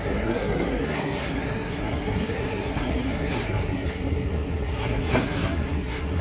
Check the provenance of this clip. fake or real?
fake